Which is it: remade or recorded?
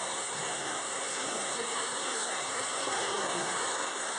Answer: remade